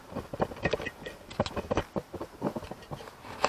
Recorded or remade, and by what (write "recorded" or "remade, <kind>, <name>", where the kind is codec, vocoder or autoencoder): recorded